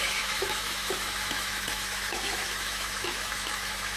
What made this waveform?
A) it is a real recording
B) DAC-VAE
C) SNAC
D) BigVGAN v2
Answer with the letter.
B